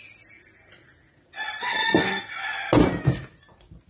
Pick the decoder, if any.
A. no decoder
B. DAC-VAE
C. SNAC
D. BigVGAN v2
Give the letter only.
A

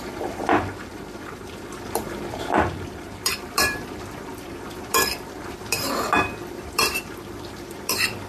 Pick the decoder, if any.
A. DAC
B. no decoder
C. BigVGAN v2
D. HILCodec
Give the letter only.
C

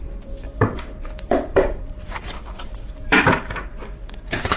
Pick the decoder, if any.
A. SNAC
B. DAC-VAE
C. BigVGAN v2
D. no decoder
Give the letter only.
C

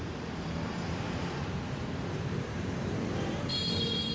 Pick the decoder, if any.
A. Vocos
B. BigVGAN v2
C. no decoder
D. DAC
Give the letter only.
B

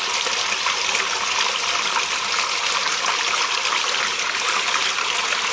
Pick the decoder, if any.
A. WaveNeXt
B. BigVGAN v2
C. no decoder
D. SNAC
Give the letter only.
C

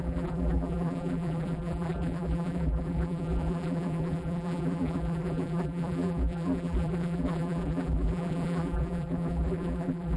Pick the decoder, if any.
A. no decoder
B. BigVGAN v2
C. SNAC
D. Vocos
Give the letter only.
B